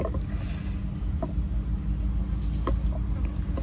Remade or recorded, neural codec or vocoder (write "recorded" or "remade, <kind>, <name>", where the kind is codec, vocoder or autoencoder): recorded